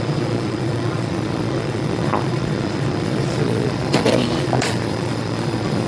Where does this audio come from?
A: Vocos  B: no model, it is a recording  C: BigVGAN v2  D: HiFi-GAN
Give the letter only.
A